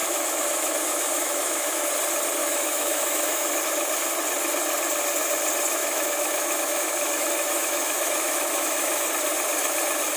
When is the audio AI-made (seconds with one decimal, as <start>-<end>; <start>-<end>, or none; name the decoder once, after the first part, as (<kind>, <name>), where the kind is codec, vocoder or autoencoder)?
0.0-1.9 (autoencoder, DAC-VAE); 2.4-3.6; 5.8-9.1

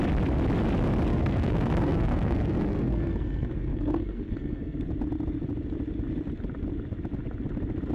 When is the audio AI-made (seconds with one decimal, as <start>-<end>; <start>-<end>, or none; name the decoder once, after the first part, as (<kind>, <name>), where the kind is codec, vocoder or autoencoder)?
1.1-4.8 (codec, SNAC)

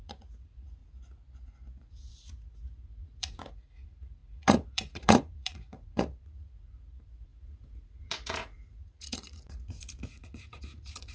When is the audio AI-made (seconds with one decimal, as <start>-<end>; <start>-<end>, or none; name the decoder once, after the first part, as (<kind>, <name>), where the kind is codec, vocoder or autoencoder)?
0.0-0.8 (vocoder, Vocos); 1.8-11.1

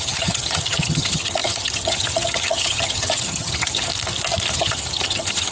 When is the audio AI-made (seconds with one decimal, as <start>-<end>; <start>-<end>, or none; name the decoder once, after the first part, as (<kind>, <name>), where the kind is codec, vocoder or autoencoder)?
0.0-3.9 (vocoder, HiFi-GAN); 4.5-5.5